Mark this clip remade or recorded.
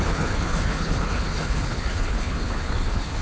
remade